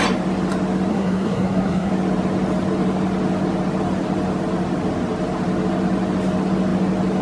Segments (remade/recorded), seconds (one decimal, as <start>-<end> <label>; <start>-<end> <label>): 0.0-0.9 recorded; 0.9-1.9 remade; 1.9-7.2 recorded